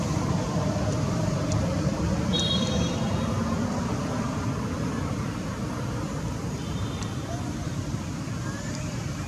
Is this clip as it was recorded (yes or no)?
no